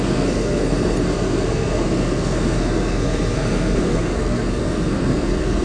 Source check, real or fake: fake